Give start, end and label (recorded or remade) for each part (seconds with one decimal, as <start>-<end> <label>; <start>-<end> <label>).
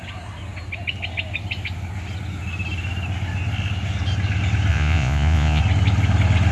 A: 0.0-4.7 recorded; 4.7-5.6 remade; 5.6-6.5 recorded